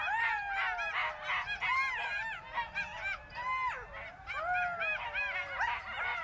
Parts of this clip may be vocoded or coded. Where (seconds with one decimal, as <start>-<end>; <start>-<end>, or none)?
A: none